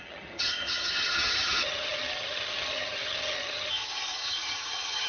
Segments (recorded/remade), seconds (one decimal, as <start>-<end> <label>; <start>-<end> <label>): 0.0-5.1 remade